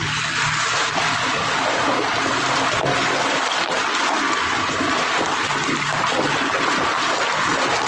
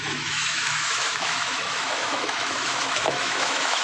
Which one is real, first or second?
first